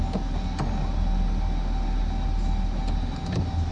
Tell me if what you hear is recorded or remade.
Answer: recorded